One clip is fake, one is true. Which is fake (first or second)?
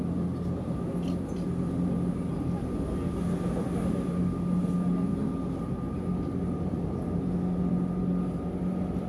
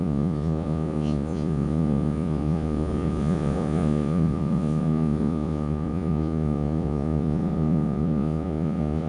second